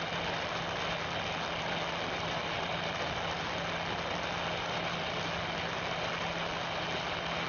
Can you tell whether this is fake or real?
real